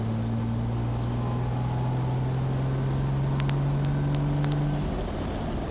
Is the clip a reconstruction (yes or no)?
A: no